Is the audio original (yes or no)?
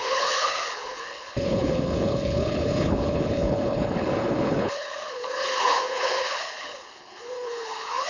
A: no